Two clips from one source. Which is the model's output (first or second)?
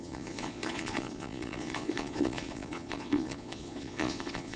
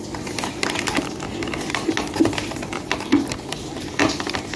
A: first